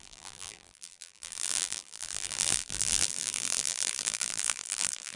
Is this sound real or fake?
fake